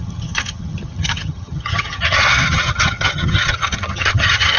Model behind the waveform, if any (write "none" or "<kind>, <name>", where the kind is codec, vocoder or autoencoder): vocoder, HiFi-GAN